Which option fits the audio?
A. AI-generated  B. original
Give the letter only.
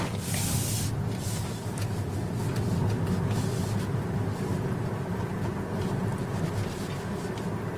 B